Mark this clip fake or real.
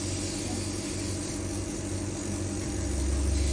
real